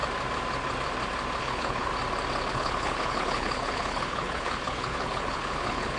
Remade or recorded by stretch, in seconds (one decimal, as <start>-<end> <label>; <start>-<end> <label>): 0.0-1.4 recorded; 1.4-1.9 remade; 1.9-2.5 recorded; 2.5-6.0 remade